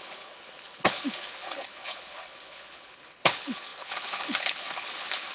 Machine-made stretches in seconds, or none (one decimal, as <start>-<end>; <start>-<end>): 0.0-5.3